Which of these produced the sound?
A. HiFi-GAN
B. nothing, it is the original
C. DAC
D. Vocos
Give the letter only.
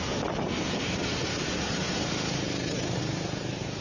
B